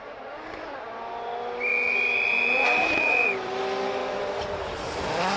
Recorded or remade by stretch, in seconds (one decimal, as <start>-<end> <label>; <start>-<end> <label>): 0.0-1.7 recorded; 1.7-3.6 remade; 3.6-4.0 recorded; 4.0-4.8 remade; 4.8-5.4 recorded